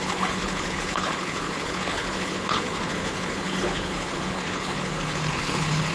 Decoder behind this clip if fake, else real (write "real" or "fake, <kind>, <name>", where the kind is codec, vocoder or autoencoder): fake, codec, HILCodec